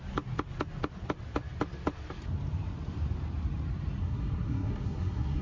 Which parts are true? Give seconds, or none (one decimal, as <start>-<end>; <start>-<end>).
0.0-4.0